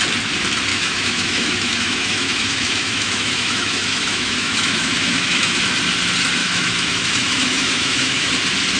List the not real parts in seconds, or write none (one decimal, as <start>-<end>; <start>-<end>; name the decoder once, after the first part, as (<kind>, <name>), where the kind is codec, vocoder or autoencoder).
0.7-5.6 (autoencoder, DAC-VAE); 6.4-8.3